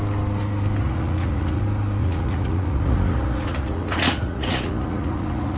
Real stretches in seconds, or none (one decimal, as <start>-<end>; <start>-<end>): 0.0-0.8; 1.6-2.0